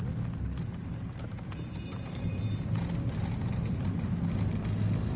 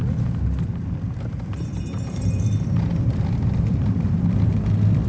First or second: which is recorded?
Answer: first